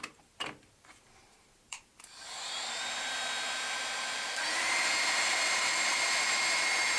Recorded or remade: remade